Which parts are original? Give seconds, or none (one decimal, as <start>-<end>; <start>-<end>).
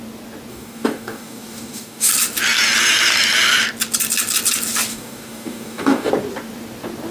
0.0-0.5; 2.1-4.9; 6.1-7.1